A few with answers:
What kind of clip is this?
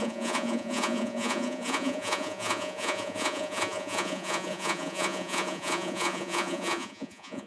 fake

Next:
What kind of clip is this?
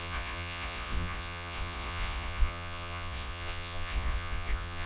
fake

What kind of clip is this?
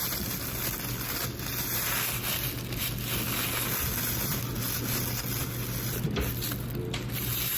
real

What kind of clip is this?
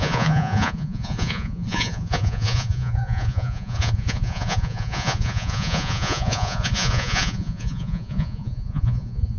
fake